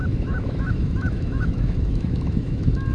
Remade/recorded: remade